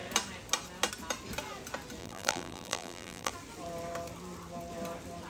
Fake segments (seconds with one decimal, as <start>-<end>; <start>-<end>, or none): 2.0-3.3